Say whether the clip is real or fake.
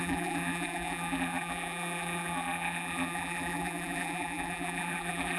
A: fake